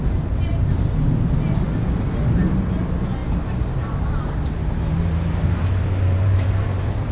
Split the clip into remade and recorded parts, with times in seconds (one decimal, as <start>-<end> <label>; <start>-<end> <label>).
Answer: 0.0-3.2 recorded; 3.2-7.1 remade